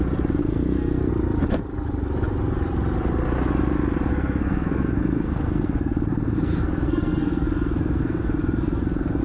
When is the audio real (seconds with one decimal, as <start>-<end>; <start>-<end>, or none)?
0.0-0.4; 1.1-4.1

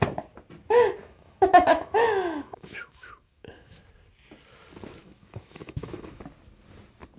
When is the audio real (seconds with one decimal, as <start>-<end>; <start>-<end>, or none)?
0.0-1.0; 3.8-5.0; 6.2-7.2

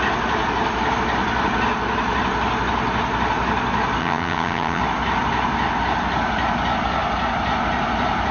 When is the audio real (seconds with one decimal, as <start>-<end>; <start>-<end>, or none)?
0.0-4.0; 4.8-8.3